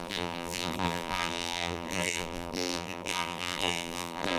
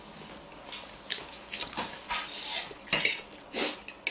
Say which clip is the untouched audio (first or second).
second